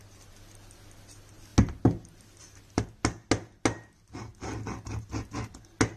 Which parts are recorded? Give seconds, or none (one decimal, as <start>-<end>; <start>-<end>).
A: 0.0-6.0